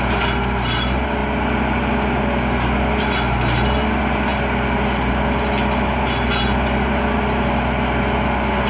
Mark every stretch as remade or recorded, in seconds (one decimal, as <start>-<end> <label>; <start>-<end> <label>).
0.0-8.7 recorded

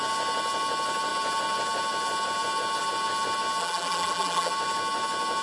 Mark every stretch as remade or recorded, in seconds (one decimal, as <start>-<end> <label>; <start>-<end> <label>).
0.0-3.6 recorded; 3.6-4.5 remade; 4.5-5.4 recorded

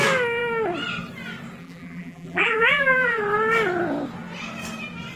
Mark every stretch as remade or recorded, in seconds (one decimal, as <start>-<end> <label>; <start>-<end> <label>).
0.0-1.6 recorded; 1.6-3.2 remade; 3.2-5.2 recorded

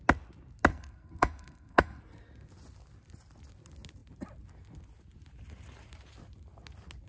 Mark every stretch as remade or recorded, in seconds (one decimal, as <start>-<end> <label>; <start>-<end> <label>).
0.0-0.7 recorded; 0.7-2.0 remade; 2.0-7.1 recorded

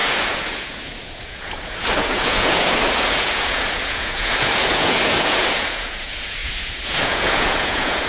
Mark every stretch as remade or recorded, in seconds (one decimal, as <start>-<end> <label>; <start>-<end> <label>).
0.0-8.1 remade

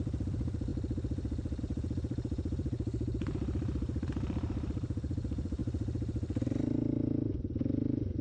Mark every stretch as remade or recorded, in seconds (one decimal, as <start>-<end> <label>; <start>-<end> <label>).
0.0-0.7 remade; 0.7-1.6 recorded; 1.6-5.6 remade; 5.6-8.2 recorded

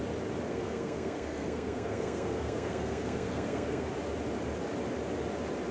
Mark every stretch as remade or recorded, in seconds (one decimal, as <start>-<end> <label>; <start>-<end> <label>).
0.0-0.5 recorded; 0.5-3.9 remade; 3.9-5.7 recorded